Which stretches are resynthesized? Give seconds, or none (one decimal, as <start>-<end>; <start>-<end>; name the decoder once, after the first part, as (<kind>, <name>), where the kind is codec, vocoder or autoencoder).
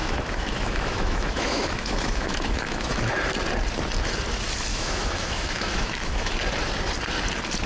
0.0-3.1 (autoencoder, DAC-VAE); 4.7-6.3